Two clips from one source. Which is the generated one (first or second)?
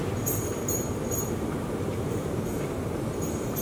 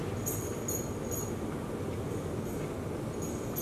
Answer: first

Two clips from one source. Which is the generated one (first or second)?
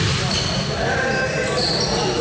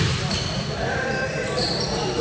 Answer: second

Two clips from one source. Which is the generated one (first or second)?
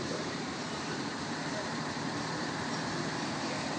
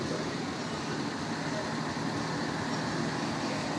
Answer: first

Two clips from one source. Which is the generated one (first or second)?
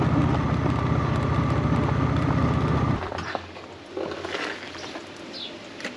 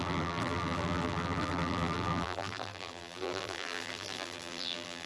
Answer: second